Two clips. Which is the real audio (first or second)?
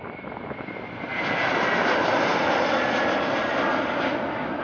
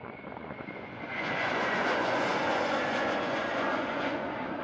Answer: first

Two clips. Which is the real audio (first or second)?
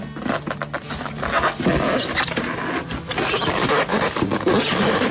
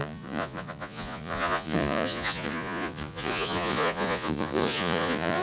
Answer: first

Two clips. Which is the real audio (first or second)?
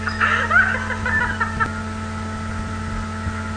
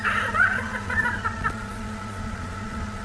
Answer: first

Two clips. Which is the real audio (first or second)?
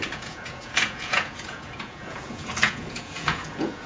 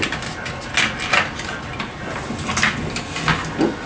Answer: second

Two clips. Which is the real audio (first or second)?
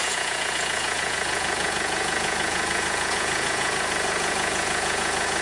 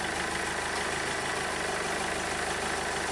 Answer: second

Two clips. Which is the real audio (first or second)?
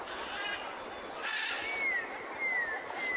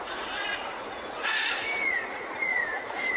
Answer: first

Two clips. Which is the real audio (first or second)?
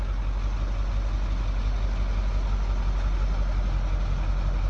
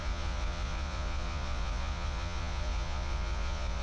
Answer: first